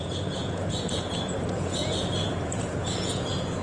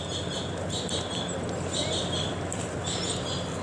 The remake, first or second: first